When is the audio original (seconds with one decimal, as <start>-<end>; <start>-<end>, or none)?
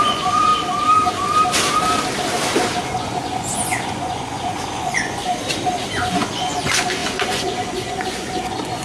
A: 0.5-2.9; 5.3-5.9